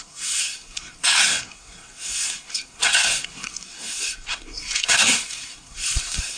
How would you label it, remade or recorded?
remade